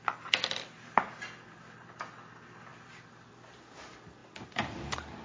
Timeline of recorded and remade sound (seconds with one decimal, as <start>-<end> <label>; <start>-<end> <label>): 0.0-5.2 recorded